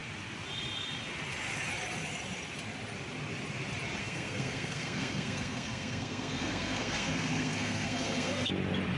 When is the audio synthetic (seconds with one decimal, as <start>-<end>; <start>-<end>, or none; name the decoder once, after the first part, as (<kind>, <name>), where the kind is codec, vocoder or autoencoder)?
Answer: 4.0-8.5 (codec, SNAC)